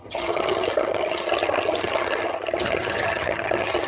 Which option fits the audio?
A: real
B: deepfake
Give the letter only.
B